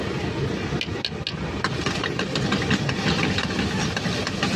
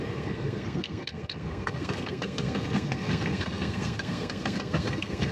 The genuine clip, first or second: first